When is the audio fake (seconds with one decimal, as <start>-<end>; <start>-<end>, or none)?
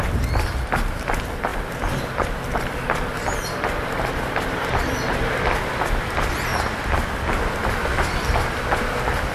6.5-7.7